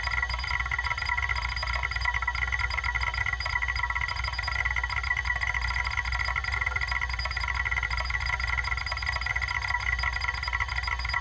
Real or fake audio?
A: real